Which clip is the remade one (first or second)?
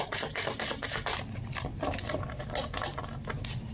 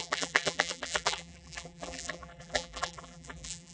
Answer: second